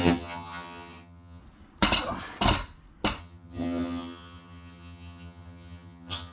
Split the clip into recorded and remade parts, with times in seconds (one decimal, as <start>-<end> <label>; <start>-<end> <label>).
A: 0.0-1.4 remade; 1.4-3.2 recorded; 3.2-6.3 remade